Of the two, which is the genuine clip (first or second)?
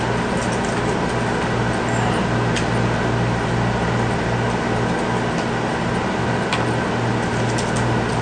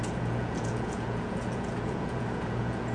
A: first